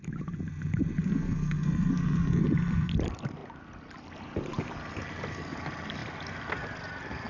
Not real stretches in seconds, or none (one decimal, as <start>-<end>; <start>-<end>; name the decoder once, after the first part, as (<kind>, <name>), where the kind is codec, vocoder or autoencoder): 1.0-2.4 (codec, SNAC)